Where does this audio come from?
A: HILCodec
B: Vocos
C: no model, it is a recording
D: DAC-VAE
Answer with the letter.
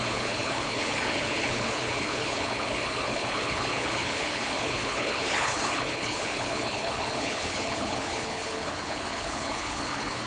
A